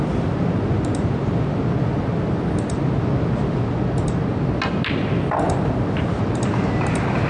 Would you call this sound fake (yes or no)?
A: no